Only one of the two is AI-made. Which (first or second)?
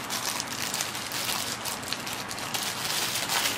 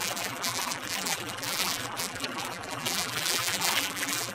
second